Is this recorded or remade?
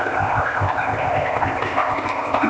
remade